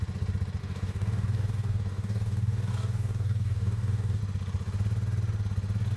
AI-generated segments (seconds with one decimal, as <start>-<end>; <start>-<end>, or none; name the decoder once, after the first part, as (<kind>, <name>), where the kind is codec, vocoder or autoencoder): 0.6-4.2 (codec, DAC)